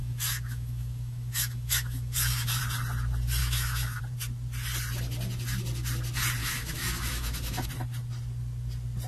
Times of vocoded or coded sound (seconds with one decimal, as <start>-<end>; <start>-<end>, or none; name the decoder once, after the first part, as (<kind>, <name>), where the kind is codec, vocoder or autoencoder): 0.0-2.6 (autoencoder, DAC-VAE); 3.4-4.0; 6.4-7.7